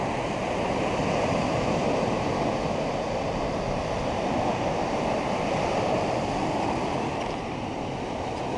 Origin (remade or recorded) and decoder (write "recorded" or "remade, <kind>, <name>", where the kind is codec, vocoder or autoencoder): recorded